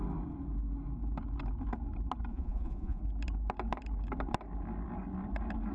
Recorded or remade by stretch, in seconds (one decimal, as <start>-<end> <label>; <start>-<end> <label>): 0.0-2.3 recorded; 2.3-3.0 remade; 3.0-5.7 recorded